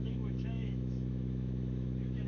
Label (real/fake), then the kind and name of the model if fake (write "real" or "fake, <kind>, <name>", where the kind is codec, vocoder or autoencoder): fake, autoencoder, DAC-VAE